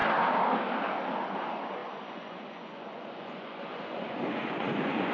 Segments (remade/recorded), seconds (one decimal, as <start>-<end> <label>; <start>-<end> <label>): 0.0-1.3 recorded; 1.3-5.1 remade